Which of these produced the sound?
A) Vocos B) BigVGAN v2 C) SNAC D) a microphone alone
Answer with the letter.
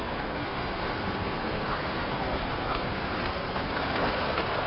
C